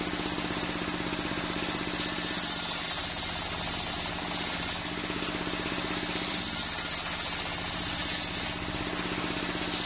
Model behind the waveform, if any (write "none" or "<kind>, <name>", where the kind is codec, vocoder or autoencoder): none